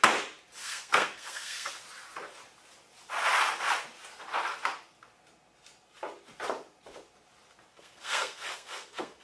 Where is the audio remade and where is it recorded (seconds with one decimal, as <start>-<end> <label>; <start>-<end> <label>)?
0.0-0.6 recorded; 0.6-1.7 remade; 1.7-7.7 recorded; 7.7-9.2 remade